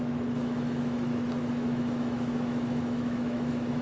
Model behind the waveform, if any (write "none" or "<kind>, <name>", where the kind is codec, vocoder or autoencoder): autoencoder, DAC-VAE